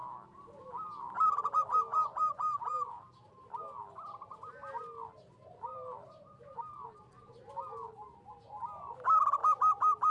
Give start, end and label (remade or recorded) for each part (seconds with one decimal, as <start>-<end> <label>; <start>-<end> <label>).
0.0-1.9 recorded; 1.9-3.6 remade; 3.6-5.7 recorded; 5.7-7.0 remade; 7.0-10.1 recorded